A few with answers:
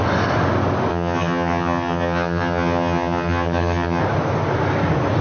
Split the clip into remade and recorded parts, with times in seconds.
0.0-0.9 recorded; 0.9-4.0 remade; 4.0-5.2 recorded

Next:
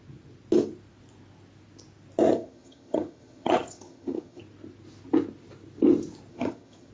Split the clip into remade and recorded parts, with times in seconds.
0.0-2.3 recorded; 2.3-4.4 remade; 4.4-6.3 recorded; 6.3-6.9 remade

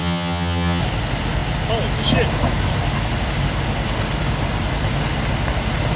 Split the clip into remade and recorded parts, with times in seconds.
0.0-0.8 remade; 0.8-6.0 recorded

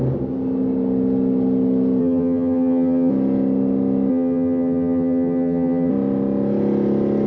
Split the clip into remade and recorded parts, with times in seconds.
0.0-2.0 recorded; 2.0-3.1 remade; 3.1-4.1 recorded; 4.1-5.9 remade; 5.9-7.3 recorded

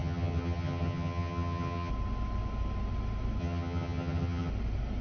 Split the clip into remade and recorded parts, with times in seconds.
0.0-1.9 remade; 1.9-3.4 recorded; 3.4-4.5 remade; 4.5-5.0 recorded